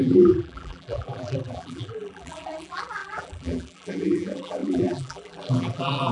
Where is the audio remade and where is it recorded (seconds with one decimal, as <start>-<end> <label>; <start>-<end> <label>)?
0.0-6.1 remade